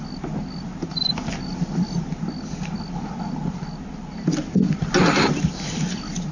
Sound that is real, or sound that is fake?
real